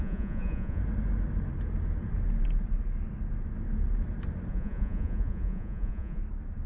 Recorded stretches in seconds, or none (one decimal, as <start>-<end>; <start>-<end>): 0.8-4.5; 6.2-6.7